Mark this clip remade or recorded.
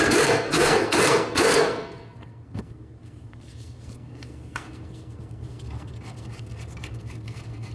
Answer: remade